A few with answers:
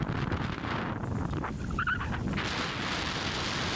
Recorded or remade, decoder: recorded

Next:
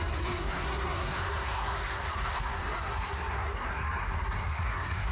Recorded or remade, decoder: remade, codec, SNAC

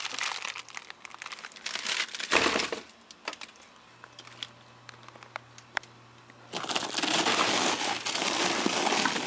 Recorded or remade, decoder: recorded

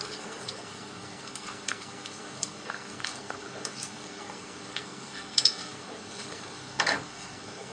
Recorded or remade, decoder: remade, codec, SNAC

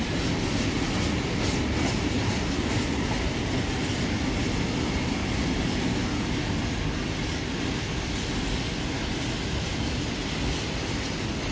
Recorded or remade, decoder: recorded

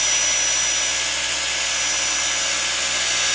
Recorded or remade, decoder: recorded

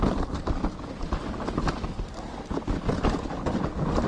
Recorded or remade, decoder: recorded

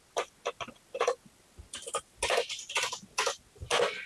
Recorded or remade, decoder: recorded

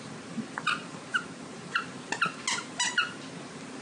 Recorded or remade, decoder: recorded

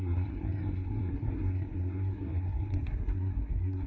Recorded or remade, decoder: remade, codec, SNAC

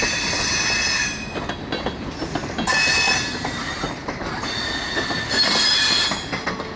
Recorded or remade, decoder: recorded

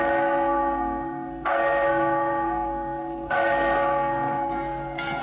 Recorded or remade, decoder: remade, codec, SNAC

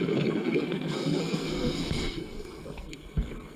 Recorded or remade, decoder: remade, codec, SNAC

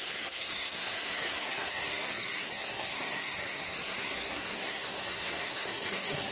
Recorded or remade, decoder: remade, codec, SNAC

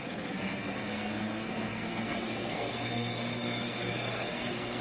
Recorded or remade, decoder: remade, codec, SNAC